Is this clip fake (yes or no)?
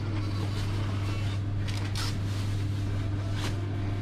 no